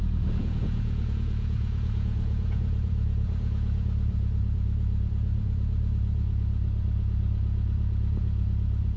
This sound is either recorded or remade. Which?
remade